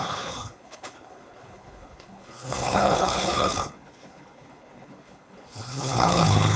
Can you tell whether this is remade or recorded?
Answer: remade